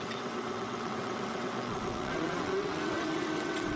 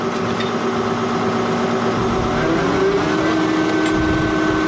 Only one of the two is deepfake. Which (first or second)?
first